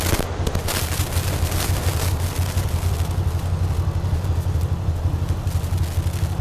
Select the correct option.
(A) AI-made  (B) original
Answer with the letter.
B